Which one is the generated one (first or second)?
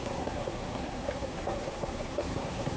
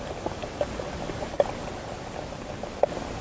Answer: first